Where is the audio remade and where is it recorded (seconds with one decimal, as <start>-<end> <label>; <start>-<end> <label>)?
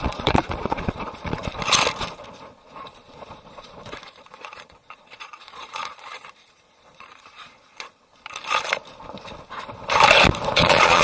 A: 0.0-1.4 remade; 1.4-2.4 recorded; 2.4-8.1 remade; 8.1-10.5 recorded; 10.5-11.0 remade